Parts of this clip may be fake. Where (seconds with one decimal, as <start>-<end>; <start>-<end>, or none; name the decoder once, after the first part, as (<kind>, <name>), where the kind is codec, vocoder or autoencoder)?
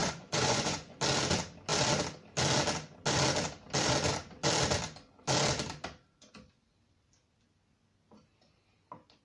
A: 0.0-1.0 (vocoder, Vocos)